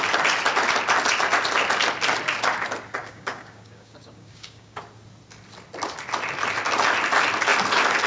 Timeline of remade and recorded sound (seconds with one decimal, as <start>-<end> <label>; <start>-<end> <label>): 0.0-3.0 recorded; 3.0-4.8 remade; 4.8-8.1 recorded